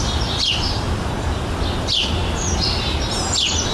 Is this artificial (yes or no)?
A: no